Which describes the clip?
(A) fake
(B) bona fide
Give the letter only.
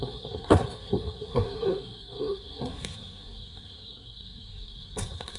A